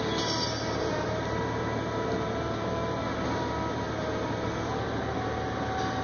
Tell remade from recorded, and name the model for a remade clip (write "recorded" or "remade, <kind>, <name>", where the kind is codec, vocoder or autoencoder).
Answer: recorded